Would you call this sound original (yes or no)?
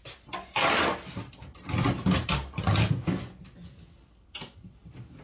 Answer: yes